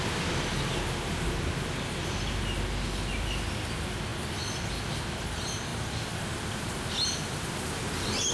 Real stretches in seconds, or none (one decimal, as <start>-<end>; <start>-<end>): 0.0-5.7; 6.2-8.3